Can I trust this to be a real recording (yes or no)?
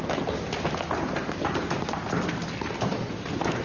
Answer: yes